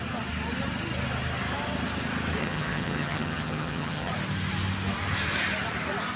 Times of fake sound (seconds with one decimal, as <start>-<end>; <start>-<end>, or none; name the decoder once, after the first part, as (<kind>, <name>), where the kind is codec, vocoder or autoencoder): 2.4-4.1 (vocoder, HiFi-GAN)